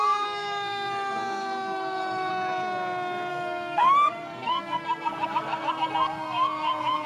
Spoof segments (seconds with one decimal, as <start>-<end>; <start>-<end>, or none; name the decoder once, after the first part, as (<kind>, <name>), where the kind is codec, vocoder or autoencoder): 0.0-2.3 (codec, SNAC); 3.3-7.1